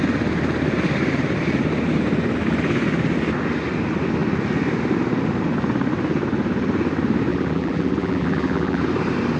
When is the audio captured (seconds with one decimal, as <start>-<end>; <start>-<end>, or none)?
0.0-7.3; 8.8-9.4